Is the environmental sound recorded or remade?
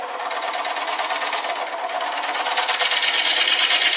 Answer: recorded